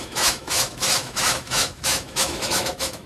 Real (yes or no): no